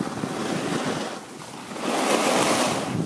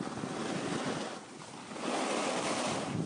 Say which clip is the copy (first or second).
second